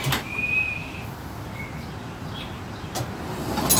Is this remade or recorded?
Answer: recorded